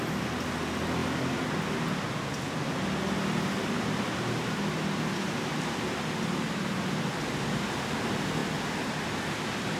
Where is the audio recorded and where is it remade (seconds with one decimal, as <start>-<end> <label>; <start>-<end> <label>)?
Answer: 0.0-9.8 recorded